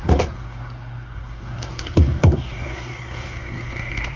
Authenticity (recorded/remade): remade